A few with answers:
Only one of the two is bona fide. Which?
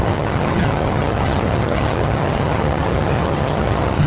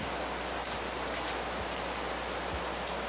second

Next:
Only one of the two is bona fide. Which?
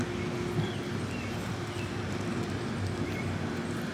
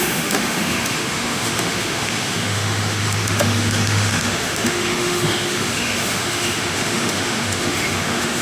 first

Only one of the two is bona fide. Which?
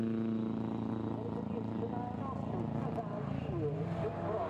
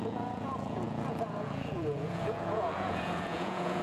first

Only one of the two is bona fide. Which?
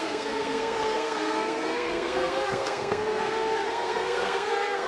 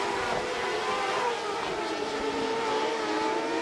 second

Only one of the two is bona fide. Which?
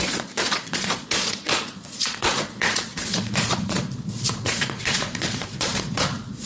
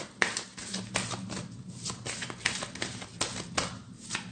second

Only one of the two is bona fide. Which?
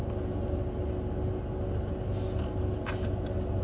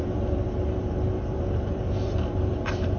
first